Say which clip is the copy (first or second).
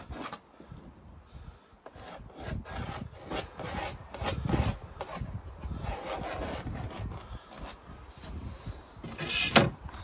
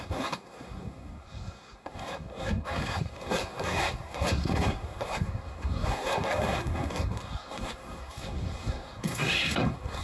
second